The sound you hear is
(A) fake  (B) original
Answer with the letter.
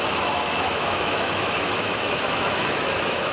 A